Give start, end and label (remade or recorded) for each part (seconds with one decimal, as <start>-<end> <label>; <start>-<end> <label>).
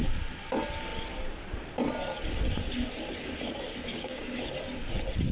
0.0-3.9 recorded; 3.9-4.4 remade; 4.4-5.3 recorded